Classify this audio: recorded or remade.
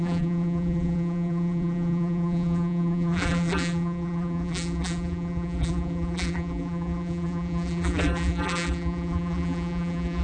remade